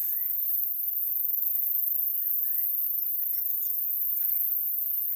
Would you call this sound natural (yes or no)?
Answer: yes